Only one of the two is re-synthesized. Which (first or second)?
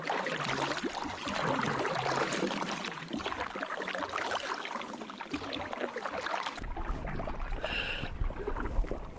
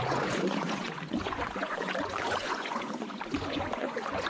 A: second